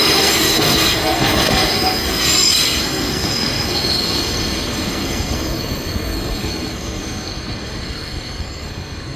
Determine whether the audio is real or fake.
fake